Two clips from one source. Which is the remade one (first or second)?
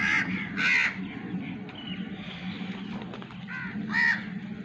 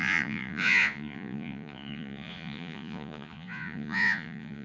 second